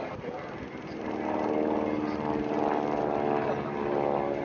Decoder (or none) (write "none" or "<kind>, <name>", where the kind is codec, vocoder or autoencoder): none